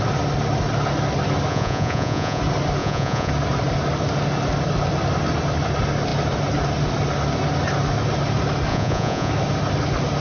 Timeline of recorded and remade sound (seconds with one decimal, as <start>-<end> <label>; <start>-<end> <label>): 0.0-1.5 recorded; 1.5-2.4 remade; 2.4-2.8 recorded; 2.8-3.3 remade; 3.3-8.7 recorded; 8.7-9.3 remade; 9.3-10.2 recorded